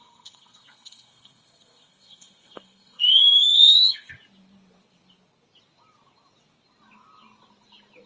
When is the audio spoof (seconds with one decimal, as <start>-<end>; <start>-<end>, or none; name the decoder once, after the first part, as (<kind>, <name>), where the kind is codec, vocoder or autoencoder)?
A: 0.0-4.1 (codec, SNAC)